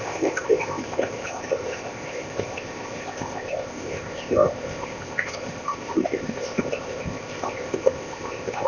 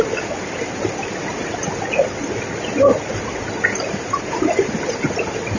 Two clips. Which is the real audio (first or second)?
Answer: second